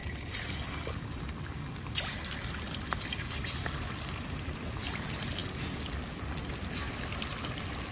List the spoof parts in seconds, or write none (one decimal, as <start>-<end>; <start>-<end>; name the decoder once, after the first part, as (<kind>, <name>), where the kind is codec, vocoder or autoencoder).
none